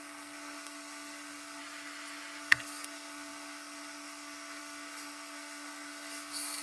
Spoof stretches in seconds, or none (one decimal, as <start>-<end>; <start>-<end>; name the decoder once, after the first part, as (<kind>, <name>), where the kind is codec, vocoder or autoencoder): 0.0-1.6 (codec, SNAC); 2.4-6.6